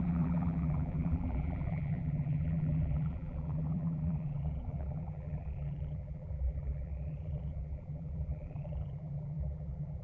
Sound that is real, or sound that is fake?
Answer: fake